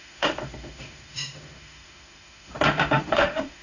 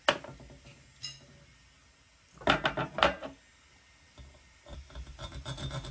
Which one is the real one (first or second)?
second